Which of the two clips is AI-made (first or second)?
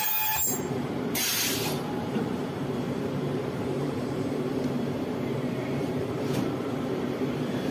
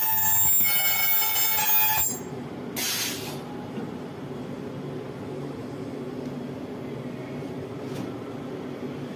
first